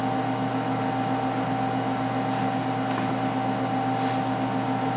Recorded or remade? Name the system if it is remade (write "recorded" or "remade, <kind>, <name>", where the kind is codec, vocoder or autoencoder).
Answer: recorded